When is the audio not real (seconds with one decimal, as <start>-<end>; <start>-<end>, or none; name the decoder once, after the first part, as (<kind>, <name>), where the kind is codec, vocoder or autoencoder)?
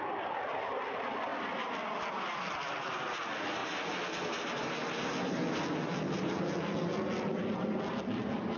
0.0-1.3 (vocoder, BigVGAN v2); 2.0-3.6; 6.8-8.6